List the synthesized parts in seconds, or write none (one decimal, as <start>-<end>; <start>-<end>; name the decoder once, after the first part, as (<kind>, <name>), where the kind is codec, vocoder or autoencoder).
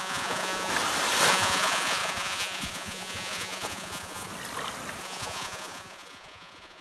0.0-0.7 (vocoder, Vocos); 1.3-4.3; 5.0-6.8